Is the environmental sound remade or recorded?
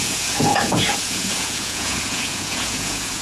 remade